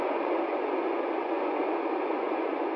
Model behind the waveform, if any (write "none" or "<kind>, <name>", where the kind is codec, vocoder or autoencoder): vocoder, Vocos